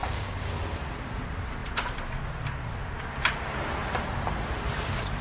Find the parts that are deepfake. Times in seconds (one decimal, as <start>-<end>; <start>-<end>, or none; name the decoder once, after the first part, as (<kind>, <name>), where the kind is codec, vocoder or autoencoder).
0.0-0.5 (codec, DAC)